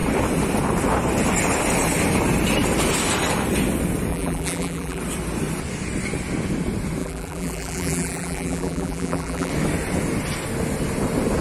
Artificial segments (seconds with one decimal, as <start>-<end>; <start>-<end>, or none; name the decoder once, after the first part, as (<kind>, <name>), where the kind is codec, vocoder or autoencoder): 4.1-5.0 (vocoder, BigVGAN v2); 7.0-9.5